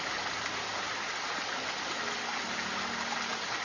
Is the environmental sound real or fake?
real